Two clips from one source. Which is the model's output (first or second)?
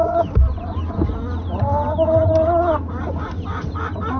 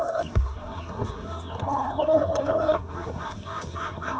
second